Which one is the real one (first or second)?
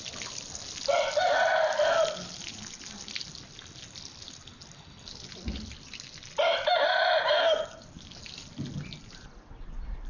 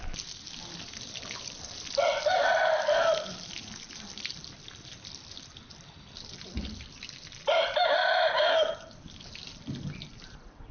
first